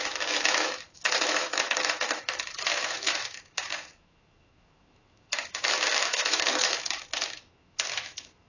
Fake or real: fake